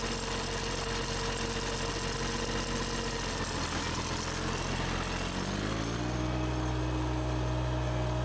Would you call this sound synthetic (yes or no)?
no